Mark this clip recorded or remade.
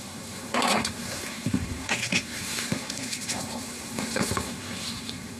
remade